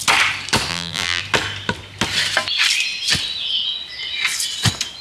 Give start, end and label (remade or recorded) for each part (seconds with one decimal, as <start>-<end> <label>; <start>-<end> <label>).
0.0-0.7 recorded; 0.7-1.2 remade; 1.2-5.0 recorded